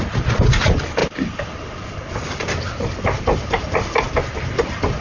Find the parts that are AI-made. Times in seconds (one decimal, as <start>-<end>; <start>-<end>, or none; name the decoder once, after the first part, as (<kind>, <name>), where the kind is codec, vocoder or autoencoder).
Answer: none